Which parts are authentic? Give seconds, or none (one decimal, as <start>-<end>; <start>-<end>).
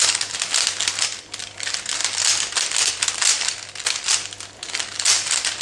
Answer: 0.0-5.6